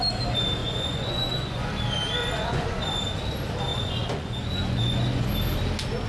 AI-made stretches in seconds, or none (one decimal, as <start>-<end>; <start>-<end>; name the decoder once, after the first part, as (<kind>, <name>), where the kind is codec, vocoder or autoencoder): 0.6-1.7 (vocoder, Vocos); 2.2-2.8; 3.7-5.3